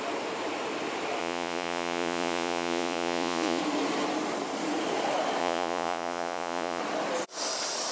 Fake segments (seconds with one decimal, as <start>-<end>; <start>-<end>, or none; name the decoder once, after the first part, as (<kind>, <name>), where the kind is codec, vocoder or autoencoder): 1.2-3.6 (vocoder, Vocos); 5.4-6.8